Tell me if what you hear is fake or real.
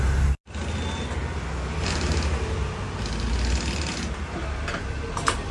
real